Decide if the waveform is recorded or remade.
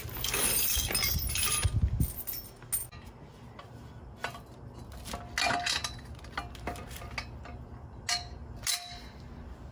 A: recorded